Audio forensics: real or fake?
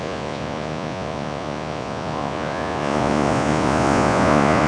fake